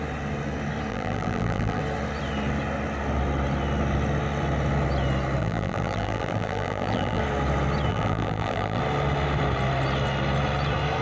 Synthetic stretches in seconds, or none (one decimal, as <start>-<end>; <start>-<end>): 0.9-1.8; 5.4-7.2; 7.9-8.8